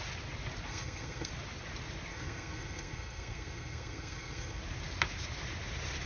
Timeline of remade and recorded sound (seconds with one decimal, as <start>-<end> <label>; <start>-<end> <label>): 0.0-0.7 recorded; 0.7-1.3 remade; 1.3-2.1 recorded; 2.1-4.6 remade; 4.6-6.1 recorded